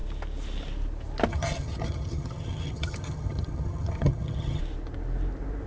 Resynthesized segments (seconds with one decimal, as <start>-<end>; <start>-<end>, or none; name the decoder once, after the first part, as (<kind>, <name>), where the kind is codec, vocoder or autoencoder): 1.3-4.6 (vocoder, HiFi-GAN)